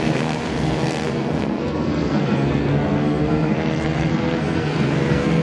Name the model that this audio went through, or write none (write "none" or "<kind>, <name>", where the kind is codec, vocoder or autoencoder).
codec, SNAC